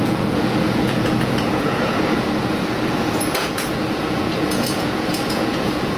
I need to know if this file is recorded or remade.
remade